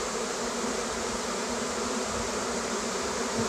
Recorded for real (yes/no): no